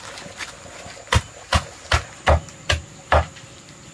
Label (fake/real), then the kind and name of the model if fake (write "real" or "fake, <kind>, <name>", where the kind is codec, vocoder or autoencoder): real